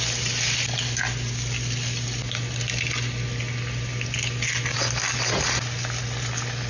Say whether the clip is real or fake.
real